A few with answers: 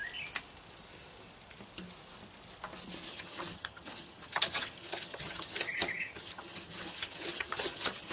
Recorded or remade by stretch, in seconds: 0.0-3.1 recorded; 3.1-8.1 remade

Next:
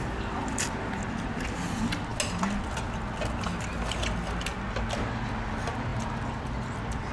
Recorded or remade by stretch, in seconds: 0.0-7.1 recorded

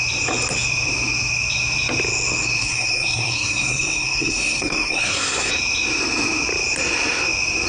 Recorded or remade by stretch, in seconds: 0.0-2.6 recorded; 2.6-5.5 remade; 5.5-7.7 recorded

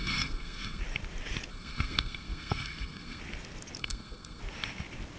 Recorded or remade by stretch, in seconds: 0.0-0.8 remade; 0.8-1.5 recorded; 1.5-3.2 remade; 3.2-3.8 recorded; 3.8-4.4 remade; 4.4-5.2 recorded